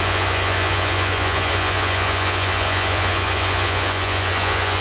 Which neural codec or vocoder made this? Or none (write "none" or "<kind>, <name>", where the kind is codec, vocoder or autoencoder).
vocoder, Vocos